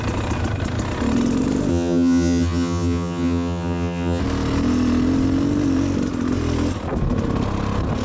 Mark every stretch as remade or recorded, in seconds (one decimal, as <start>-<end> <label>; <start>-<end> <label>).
0.0-1.7 recorded; 1.7-4.2 remade; 4.2-8.0 recorded